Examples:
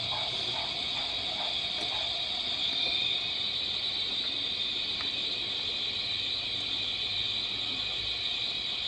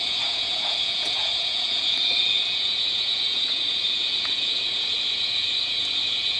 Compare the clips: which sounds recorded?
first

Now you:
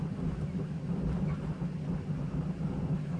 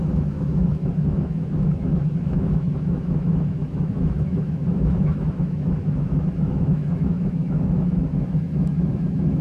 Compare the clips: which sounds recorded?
first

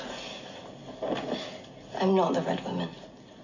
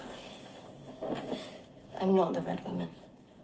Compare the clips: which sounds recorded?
first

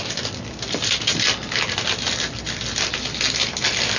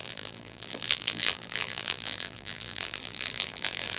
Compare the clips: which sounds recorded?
first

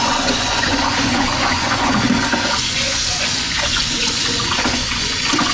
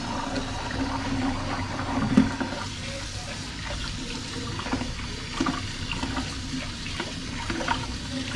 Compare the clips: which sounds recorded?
second